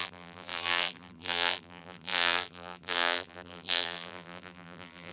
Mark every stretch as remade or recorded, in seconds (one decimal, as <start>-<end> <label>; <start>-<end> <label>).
0.0-5.1 remade

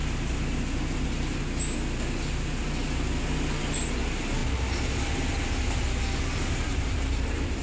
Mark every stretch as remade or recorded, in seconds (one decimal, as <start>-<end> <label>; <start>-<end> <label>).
0.0-6.7 recorded; 6.7-7.6 remade

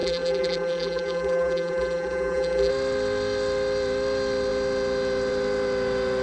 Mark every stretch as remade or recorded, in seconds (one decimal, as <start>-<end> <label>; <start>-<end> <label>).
0.0-2.7 remade; 2.7-6.2 recorded

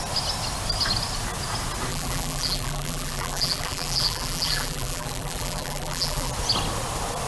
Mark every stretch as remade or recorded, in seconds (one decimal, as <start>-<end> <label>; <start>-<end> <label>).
0.0-1.9 recorded; 1.9-6.3 remade; 6.3-7.3 recorded